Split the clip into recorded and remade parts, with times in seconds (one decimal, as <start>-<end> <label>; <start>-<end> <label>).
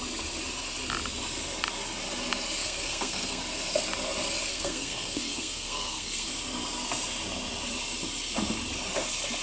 0.0-2.6 recorded; 2.6-3.4 remade; 3.4-4.5 recorded; 4.5-6.3 remade; 6.3-9.4 recorded